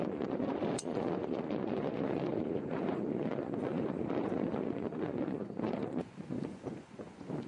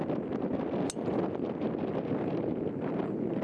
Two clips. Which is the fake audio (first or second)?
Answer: first